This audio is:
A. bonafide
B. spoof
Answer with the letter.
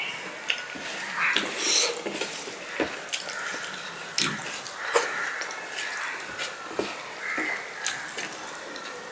A